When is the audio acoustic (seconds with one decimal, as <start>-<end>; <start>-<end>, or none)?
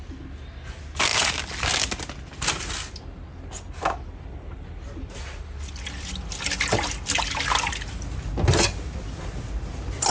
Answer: 0.0-10.1